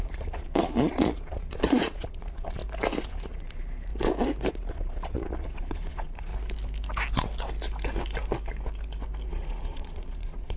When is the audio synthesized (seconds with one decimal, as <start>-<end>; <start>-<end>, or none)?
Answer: 0.0-2.6; 3.1-3.9; 4.5-6.3; 9.3-10.6